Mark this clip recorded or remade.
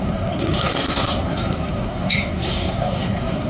remade